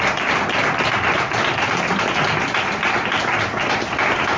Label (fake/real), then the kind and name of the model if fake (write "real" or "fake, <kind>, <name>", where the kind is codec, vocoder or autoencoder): real